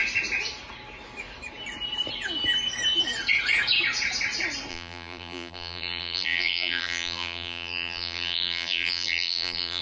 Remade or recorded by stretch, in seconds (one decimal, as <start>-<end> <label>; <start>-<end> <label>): 0.0-4.7 recorded; 4.7-9.8 remade